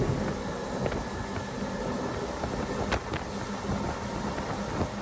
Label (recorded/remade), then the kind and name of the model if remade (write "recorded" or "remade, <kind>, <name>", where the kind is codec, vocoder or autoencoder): recorded